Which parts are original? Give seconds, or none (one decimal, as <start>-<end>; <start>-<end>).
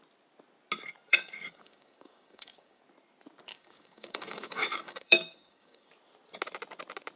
0.0-1.1; 2.8-3.5; 5.9-7.2